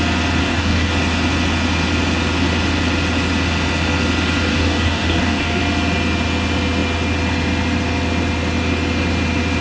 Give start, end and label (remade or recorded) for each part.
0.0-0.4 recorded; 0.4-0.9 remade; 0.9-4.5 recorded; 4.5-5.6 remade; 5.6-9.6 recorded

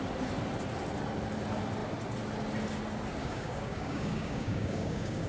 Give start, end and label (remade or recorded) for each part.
0.0-3.2 recorded; 3.2-5.3 remade

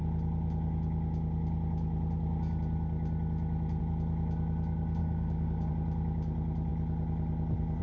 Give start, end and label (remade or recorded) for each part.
0.0-5.0 recorded; 5.0-5.7 remade; 5.7-7.8 recorded

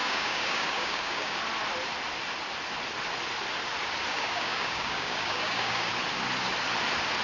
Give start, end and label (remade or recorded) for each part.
0.0-1.4 remade; 1.4-4.1 recorded; 4.1-5.9 remade; 5.9-7.2 recorded

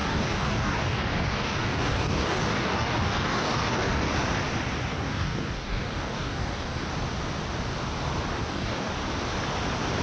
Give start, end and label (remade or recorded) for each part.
0.0-4.1 remade; 4.1-4.9 recorded; 4.9-6.9 remade; 6.9-8.4 recorded; 8.4-8.9 remade; 8.9-10.0 recorded